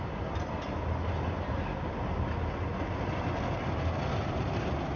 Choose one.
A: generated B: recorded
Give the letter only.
B